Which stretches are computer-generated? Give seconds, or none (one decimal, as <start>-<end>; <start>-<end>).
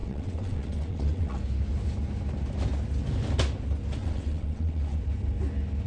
0.0-1.4; 4.0-5.0